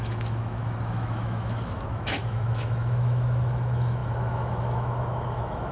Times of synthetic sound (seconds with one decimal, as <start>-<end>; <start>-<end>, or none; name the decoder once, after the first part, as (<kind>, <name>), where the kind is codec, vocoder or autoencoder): 0.0-5.7 (autoencoder, DAC-VAE)